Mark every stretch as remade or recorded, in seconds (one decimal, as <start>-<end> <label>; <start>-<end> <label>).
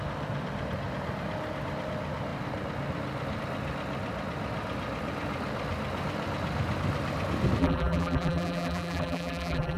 0.0-7.6 recorded; 7.6-9.8 remade